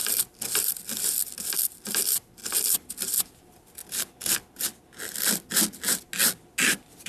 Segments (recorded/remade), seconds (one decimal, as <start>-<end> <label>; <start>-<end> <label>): 0.0-3.8 remade; 3.8-5.0 recorded; 5.0-5.6 remade; 5.6-6.6 recorded; 6.6-7.1 remade